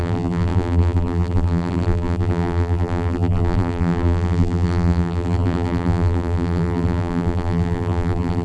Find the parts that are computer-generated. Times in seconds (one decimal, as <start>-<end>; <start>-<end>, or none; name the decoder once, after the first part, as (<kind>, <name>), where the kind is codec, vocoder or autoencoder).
0.0-8.4 (vocoder, BigVGAN v2)